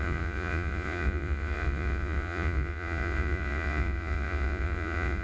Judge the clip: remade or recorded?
remade